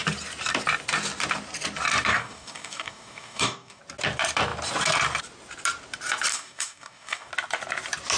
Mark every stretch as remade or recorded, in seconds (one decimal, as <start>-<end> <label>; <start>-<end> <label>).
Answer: 0.0-2.1 recorded; 2.1-3.8 remade; 3.8-6.3 recorded; 6.3-7.3 remade; 7.3-8.2 recorded